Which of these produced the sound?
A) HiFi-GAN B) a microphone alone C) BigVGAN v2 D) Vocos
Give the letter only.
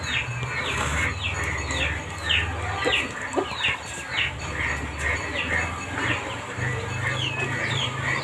B